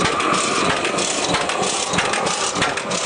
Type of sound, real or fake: real